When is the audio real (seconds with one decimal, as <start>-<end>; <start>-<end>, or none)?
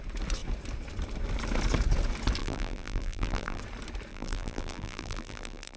0.0-2.4; 3.6-4.1